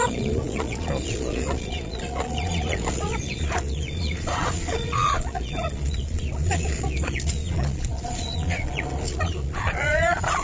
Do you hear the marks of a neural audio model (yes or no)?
yes